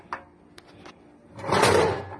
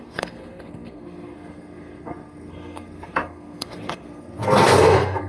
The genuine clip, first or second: first